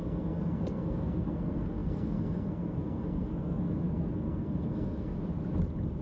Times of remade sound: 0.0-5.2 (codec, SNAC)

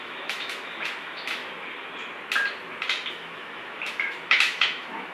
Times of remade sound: 0.0-1.4 (autoencoder, DAC-VAE); 3.1-5.1

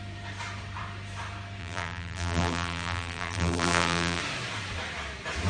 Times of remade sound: 1.6-4.2 (vocoder, BigVGAN v2)

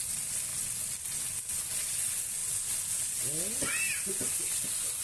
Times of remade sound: none